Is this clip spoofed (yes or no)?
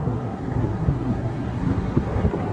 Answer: yes